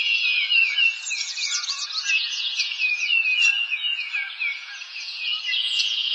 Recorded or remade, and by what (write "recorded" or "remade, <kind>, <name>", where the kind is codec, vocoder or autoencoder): remade, vocoder, Vocos